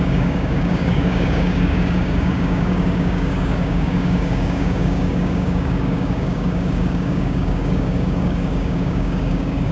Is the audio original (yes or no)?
no